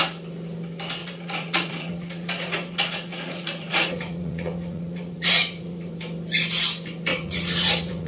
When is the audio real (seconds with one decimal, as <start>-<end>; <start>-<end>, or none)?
0.0-1.0; 5.9-7.1